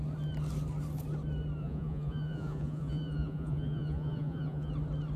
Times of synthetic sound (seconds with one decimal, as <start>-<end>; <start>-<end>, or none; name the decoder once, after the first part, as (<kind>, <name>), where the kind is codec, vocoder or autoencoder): 1.6-4.7 (vocoder, Vocos)